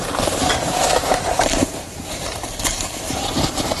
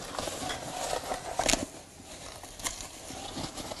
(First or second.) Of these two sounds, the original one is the second